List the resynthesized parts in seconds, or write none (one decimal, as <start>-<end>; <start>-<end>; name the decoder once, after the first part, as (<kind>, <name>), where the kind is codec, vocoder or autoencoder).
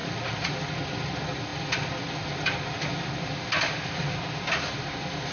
0.0-0.5 (vocoder, Vocos)